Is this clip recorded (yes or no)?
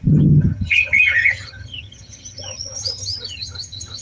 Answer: no